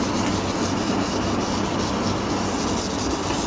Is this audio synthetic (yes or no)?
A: no